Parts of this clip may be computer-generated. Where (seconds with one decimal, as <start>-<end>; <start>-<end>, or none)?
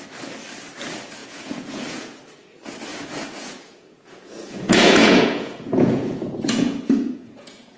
1.2-2.2; 2.9-7.8